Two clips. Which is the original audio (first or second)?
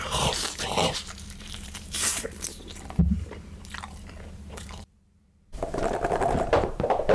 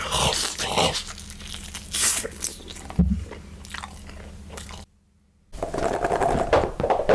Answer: second